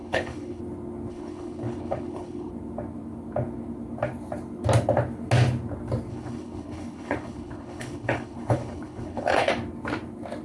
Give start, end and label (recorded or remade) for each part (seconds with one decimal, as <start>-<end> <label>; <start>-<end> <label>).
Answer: 0.0-0.6 remade; 0.6-1.1 recorded; 1.1-2.5 remade; 2.5-6.1 recorded; 6.1-9.5 remade; 9.5-10.4 recorded